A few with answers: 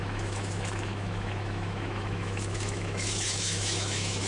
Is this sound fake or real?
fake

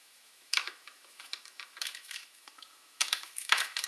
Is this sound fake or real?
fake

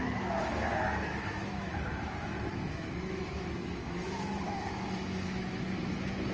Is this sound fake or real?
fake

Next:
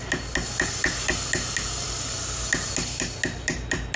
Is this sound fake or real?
real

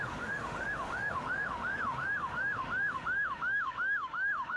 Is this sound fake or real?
fake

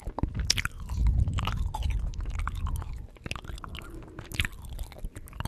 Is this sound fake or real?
real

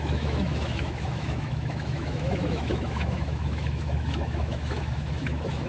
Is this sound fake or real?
fake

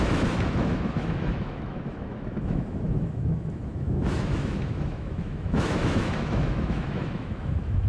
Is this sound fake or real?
fake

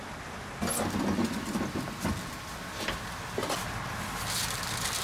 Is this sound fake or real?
real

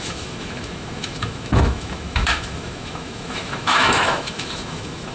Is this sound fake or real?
fake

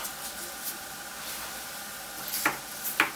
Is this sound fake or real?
real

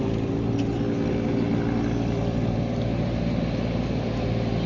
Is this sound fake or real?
real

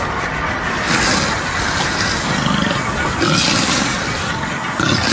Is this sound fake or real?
real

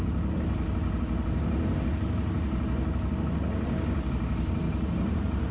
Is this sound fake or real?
real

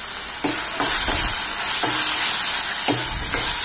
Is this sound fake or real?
real